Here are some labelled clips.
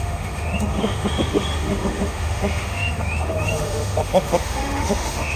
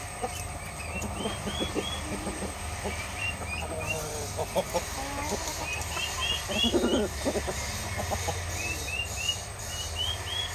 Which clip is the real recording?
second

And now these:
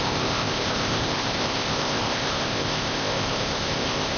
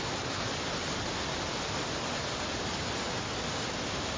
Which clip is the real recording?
second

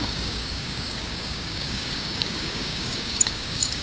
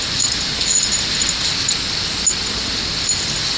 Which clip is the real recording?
second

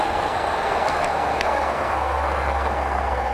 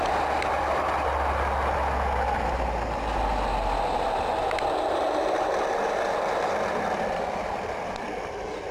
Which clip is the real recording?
second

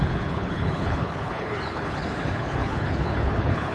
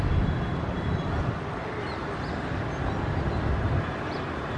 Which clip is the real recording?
second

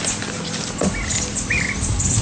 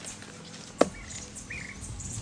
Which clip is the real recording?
second